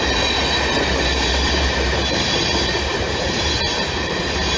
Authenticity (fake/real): fake